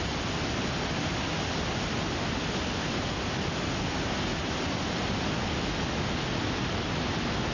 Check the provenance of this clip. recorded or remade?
recorded